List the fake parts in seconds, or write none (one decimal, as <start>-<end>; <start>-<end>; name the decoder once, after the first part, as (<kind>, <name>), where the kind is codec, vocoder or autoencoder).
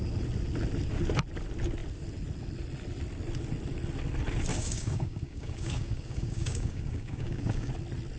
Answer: 4.5-7.7 (codec, DAC)